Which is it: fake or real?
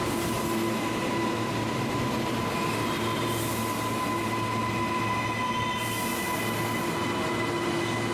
real